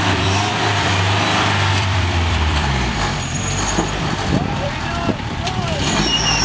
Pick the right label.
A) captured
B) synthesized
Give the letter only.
B